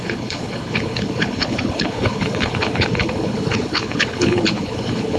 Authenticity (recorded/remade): remade